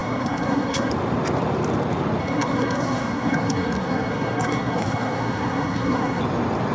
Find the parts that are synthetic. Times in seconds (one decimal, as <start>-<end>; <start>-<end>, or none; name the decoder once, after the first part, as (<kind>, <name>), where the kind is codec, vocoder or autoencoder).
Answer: 0.0-0.9 (codec, SNAC); 2.2-6.2